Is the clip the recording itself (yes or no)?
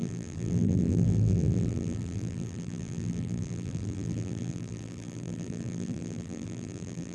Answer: no